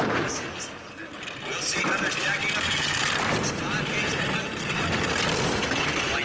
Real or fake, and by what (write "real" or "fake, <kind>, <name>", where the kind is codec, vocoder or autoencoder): real